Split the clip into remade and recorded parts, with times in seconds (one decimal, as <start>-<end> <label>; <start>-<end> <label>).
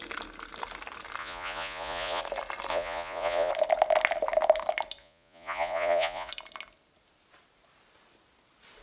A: 0.0-1.2 recorded; 1.2-2.2 remade; 2.2-2.7 recorded; 2.7-3.5 remade; 3.5-5.0 recorded; 5.0-6.3 remade; 6.3-8.8 recorded